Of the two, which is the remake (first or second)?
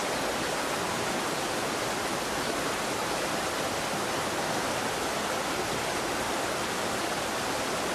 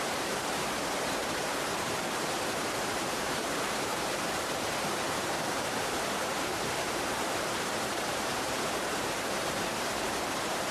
second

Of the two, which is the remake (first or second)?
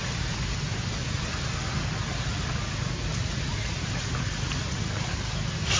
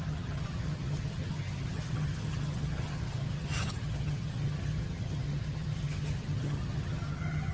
second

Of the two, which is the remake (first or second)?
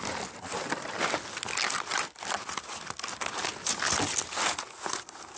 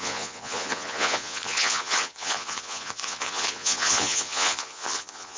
second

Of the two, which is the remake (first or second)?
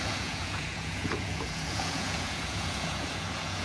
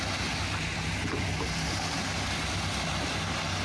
first